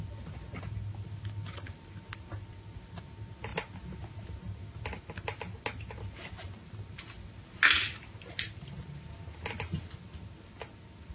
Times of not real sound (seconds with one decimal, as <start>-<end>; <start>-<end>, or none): none